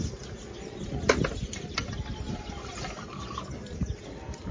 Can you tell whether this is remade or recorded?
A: recorded